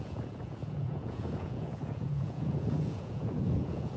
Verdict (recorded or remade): remade